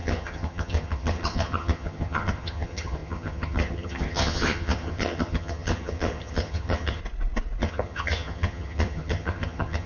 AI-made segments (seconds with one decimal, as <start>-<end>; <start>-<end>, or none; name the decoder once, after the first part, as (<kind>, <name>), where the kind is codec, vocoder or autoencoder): 0.0-7.0 (vocoder, HiFi-GAN); 7.6-9.9

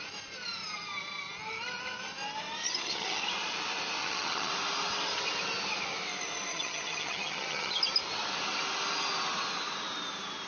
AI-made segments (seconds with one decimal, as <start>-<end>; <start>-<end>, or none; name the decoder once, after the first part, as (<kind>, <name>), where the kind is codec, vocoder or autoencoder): 2.6-3.2 (vocoder, HiFi-GAN); 4.0-4.5; 6.5-7.8